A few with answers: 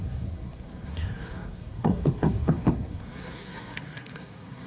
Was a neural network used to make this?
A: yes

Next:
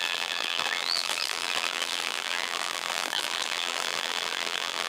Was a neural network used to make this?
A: yes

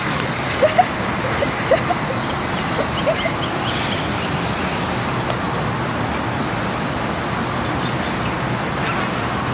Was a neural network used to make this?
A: no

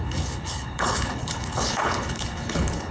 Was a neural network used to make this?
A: yes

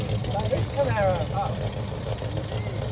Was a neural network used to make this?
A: no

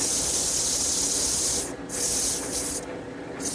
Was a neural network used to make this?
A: no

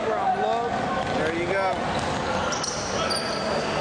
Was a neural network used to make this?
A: no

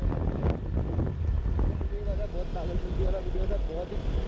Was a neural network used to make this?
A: no